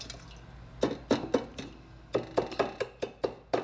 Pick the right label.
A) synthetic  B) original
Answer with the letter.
B